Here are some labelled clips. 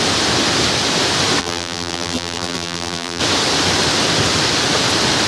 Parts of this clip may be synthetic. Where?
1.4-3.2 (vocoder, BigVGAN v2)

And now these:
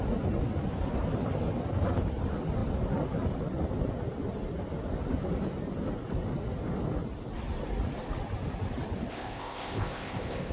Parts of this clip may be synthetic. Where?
9.1-10.5 (codec, ZipCodec)

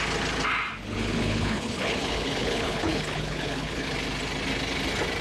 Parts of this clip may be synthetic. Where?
0.8-3.9 (codec, HILCodec)

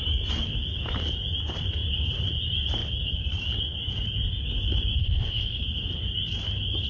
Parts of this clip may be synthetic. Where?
5.0-5.6 (codec, ZipCodec)

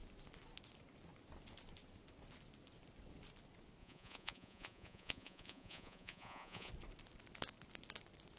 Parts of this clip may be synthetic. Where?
3.8-6.7 (vocoder, Vocos)